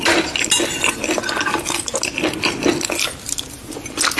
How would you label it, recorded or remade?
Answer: recorded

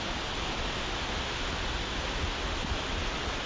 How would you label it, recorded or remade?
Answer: recorded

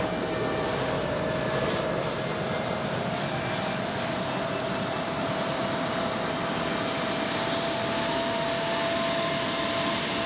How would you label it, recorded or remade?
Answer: recorded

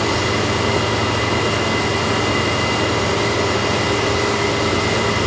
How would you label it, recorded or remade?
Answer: recorded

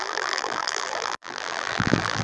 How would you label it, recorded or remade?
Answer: remade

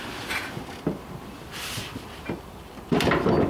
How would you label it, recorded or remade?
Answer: recorded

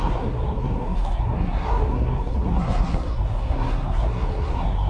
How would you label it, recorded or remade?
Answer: remade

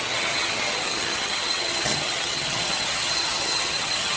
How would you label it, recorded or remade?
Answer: remade